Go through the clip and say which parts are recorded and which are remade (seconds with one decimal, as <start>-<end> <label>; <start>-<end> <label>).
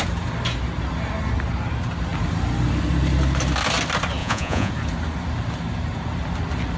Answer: 0.0-4.2 recorded; 4.2-4.7 remade; 4.7-6.8 recorded